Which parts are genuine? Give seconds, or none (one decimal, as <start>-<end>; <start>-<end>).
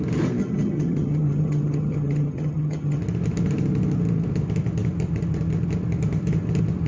0.0-0.4; 3.0-6.9